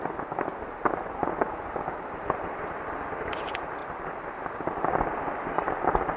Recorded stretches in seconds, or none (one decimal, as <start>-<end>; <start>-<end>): 0.0-6.2